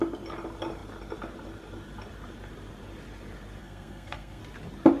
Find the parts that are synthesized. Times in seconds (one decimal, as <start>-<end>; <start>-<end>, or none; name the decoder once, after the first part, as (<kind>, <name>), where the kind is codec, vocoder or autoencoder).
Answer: 3.6-4.4 (codec, SNAC)